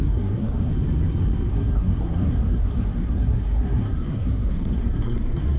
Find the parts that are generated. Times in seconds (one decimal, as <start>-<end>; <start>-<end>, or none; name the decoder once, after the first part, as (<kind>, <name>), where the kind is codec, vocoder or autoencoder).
0.0-0.7 (codec, SNAC); 1.5-5.6